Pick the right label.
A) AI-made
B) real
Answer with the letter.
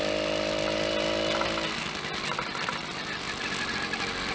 B